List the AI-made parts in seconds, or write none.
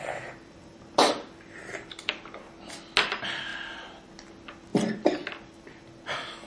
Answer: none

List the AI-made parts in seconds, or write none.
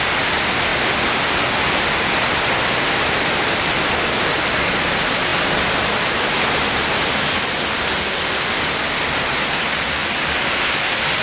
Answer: none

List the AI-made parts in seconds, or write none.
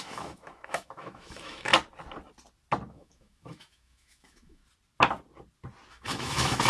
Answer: 0.0-1.7; 2.9-4.6; 5.9-6.7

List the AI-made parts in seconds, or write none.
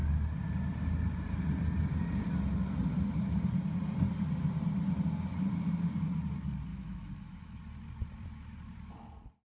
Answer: 6.7-7.6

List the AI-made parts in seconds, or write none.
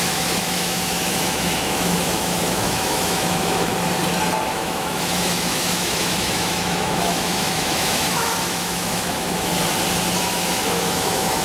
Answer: 0.0-3.7; 4.5-9.5; 10.2-11.4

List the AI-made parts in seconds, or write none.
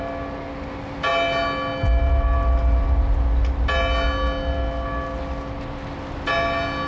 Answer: none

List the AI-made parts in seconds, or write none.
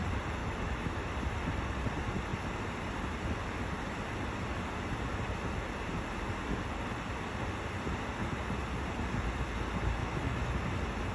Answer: 0.4-1.1; 10.0-10.5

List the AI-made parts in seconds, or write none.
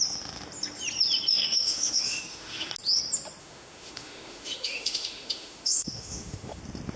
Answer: 1.3-2.7; 3.4-6.6